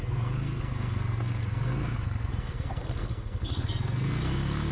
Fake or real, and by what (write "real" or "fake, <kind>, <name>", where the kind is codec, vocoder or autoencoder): fake, codec, SNAC